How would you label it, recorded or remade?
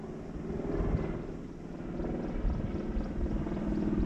recorded